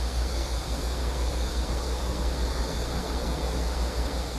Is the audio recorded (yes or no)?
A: no